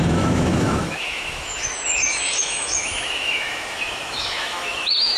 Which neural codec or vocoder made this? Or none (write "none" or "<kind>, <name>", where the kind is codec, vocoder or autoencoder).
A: autoencoder, DAC-VAE